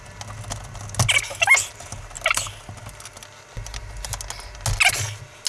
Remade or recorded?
recorded